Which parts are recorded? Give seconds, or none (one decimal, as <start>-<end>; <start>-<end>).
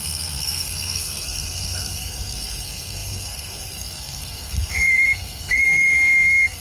none